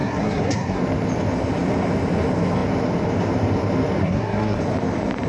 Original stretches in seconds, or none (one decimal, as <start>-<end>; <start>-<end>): 0.8-4.0; 4.6-5.3